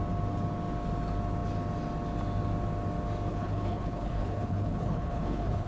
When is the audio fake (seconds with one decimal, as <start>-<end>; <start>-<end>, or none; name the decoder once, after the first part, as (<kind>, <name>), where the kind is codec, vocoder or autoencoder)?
3.3-5.7 (codec, HILCodec)